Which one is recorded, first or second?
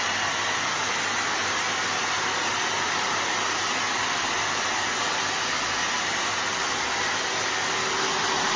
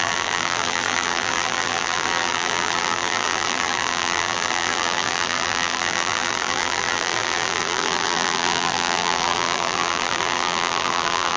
first